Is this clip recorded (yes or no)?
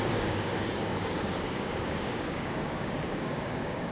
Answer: no